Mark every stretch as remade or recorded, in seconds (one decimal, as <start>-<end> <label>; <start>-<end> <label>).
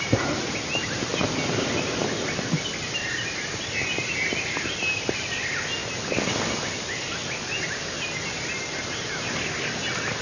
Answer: 0.0-10.2 recorded